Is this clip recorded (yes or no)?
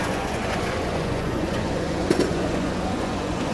no